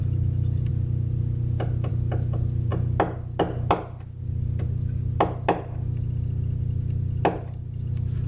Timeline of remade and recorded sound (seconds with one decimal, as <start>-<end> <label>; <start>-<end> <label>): 0.0-8.3 recorded